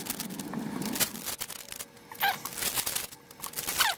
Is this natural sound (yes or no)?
yes